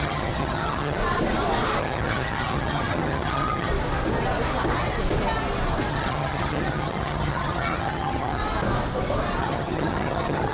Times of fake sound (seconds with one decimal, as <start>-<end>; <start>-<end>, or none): 0.0-1.0; 1.8-3.7; 5.9-8.4; 9.4-10.5